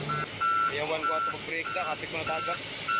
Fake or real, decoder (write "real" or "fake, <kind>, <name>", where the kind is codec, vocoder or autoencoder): real